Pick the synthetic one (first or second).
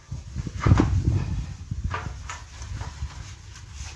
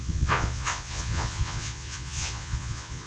second